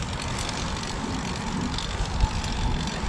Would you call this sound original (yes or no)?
yes